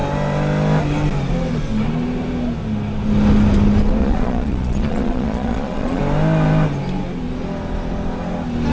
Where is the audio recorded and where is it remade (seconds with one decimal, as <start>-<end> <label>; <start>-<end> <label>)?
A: 0.0-4.0 recorded; 4.0-6.0 remade; 6.0-8.7 recorded